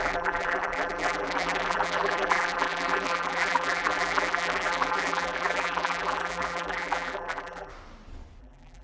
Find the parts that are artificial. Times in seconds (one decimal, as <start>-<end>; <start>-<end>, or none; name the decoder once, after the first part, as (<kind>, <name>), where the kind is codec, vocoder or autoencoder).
0.0-7.7 (vocoder, BigVGAN v2); 8.4-8.8